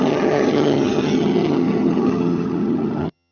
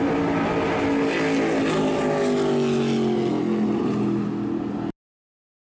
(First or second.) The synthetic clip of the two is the first